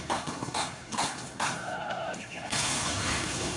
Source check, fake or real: fake